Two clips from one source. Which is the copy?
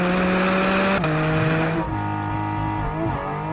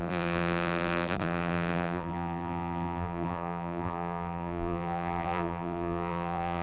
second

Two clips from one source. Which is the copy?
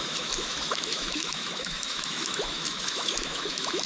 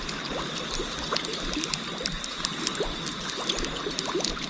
first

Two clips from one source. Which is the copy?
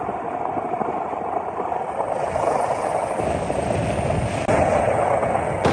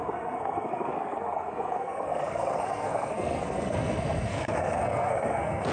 second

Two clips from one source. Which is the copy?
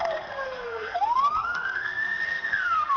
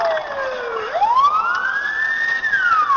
first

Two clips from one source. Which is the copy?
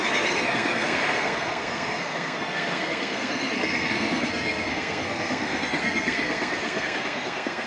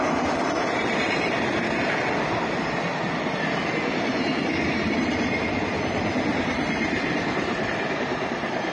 first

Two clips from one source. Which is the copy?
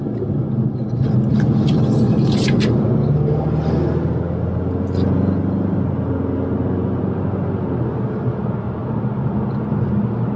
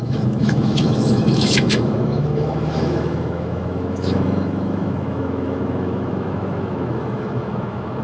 second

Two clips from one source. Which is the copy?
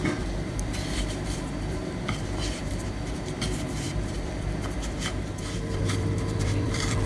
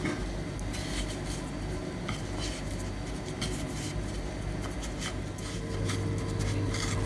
first